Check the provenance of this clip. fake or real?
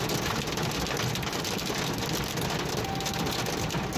real